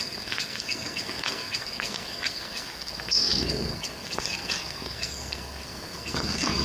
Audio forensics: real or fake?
fake